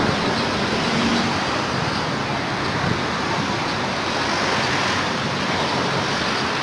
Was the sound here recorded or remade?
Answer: recorded